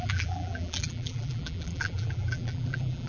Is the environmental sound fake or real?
fake